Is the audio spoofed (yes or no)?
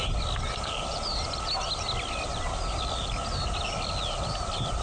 no